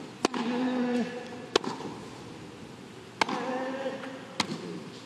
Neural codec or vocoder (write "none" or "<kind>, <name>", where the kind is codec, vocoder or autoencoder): none